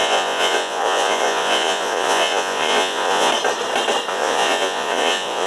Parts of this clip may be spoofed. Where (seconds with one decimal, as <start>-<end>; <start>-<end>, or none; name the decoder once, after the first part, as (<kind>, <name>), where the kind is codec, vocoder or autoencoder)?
0.0-3.3 (vocoder, Vocos); 4.1-5.5